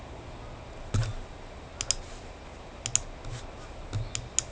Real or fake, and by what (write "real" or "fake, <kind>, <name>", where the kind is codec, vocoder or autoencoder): real